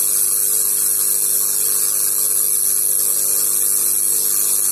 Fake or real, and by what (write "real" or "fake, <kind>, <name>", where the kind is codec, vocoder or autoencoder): real